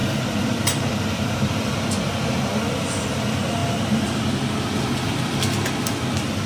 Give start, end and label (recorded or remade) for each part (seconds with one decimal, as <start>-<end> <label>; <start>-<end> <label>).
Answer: 0.0-0.9 remade; 0.9-6.5 recorded